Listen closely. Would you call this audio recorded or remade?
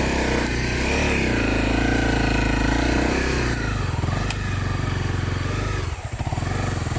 recorded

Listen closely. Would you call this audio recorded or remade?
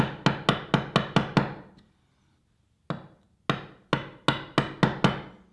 recorded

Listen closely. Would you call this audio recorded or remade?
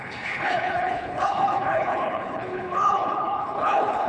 remade